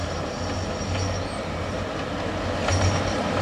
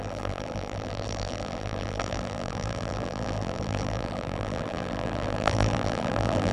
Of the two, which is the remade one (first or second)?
second